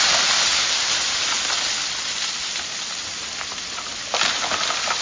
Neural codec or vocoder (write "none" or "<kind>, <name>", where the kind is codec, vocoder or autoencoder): none